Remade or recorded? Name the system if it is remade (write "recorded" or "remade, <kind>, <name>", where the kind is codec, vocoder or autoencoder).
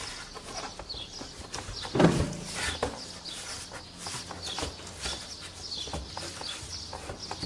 recorded